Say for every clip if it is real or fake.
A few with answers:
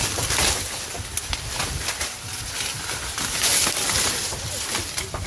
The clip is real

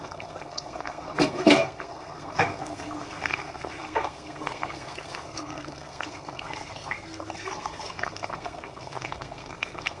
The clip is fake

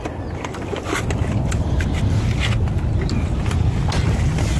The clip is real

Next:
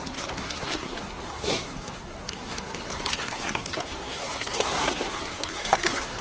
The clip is fake